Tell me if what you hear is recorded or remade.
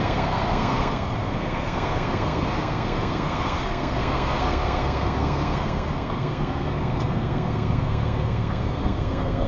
remade